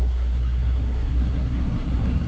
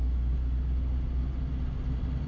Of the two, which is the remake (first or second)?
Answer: first